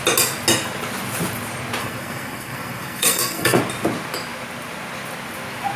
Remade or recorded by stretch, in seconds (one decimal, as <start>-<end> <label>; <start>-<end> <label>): 0.0-1.8 recorded; 1.8-3.6 remade; 3.6-5.8 recorded